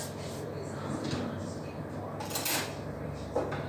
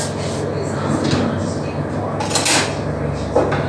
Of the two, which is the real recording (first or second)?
second